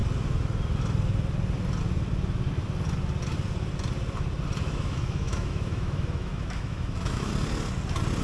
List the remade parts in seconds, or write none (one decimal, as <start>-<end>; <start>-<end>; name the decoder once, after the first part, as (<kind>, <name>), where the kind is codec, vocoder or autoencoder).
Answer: 4.6-7.3 (autoencoder, DAC-VAE)